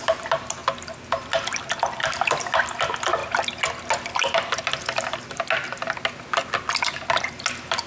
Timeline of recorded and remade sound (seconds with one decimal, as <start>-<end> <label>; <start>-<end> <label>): 0.0-7.9 recorded